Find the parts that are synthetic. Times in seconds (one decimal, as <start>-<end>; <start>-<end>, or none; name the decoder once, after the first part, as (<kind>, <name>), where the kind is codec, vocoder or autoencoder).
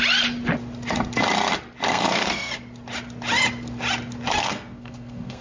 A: 1.9-2.5 (codec, SNAC); 4.4-5.4